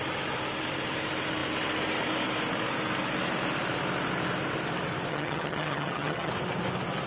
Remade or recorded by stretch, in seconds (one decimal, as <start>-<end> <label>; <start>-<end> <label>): 0.0-5.1 recorded; 5.1-6.3 remade; 6.3-7.1 recorded